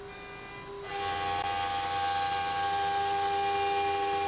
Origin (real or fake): real